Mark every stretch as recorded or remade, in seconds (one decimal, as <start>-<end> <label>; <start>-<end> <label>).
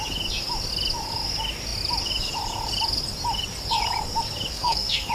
0.0-4.5 recorded; 4.5-5.1 remade